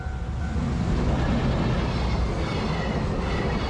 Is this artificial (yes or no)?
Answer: no